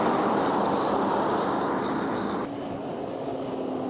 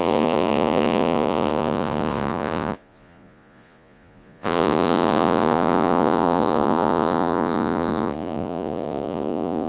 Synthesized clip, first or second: second